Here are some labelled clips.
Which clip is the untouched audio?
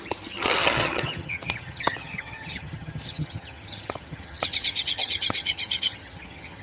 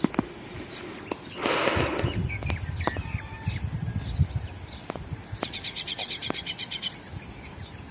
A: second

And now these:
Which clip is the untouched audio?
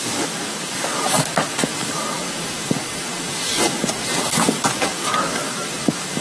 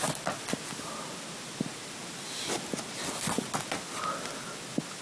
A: second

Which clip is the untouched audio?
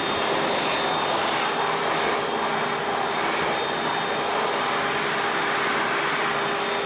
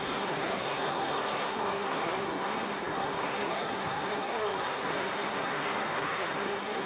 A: first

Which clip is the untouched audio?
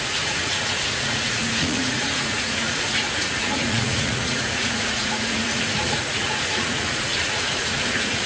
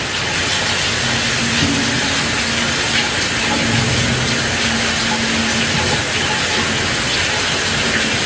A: second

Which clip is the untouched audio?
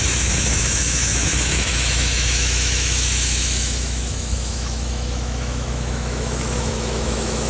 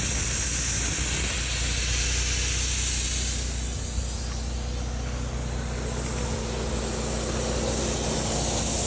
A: second